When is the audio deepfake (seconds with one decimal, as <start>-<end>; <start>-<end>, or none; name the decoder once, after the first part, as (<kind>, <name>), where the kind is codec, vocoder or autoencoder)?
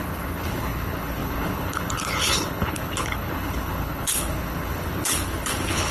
0.0-5.9 (codec, HILCodec)